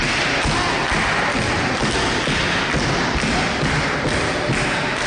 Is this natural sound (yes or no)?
yes